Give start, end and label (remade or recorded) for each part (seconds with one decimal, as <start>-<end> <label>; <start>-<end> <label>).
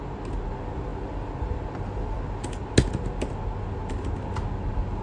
0.0-5.0 recorded